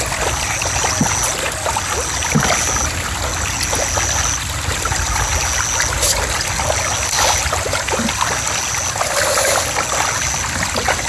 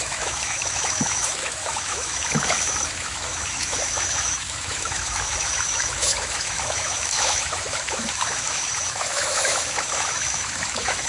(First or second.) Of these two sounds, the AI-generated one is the second